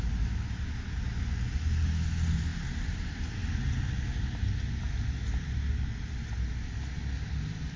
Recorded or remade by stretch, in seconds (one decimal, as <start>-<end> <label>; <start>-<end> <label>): 0.0-7.8 recorded